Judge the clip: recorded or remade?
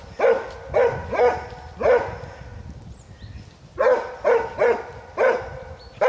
recorded